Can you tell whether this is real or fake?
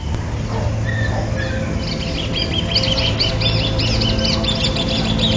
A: real